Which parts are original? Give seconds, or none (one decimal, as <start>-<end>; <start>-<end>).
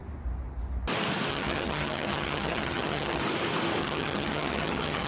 0.0-1.3; 3.2-3.8